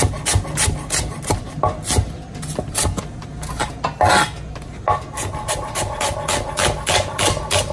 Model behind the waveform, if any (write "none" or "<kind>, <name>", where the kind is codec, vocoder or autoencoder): none